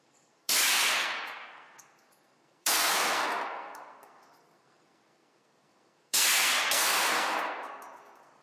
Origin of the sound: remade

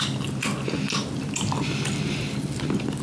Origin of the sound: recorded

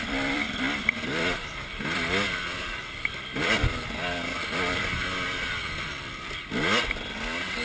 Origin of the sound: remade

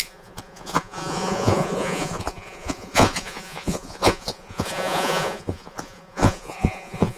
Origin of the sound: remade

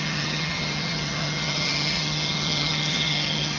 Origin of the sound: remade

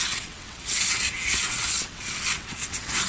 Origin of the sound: remade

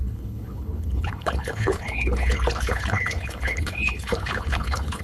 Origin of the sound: remade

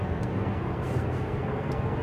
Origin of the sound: remade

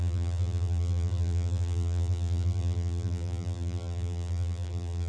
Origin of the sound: remade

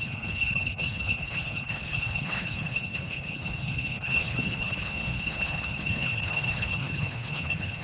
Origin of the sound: remade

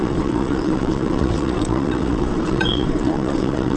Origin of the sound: remade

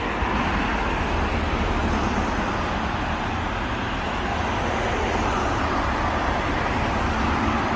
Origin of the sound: recorded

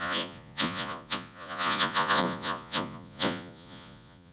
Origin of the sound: remade